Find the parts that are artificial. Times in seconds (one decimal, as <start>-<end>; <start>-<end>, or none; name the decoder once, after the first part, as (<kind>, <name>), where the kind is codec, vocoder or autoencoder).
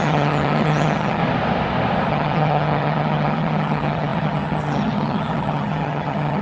0.0-1.2 (vocoder, HiFi-GAN); 2.1-6.4